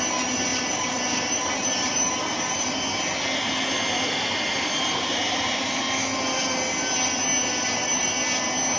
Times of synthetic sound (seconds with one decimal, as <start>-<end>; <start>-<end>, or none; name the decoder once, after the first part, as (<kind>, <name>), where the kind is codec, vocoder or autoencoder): 0.5-2.8 (vocoder, BigVGAN v2); 4.5-5.8; 7.5-8.1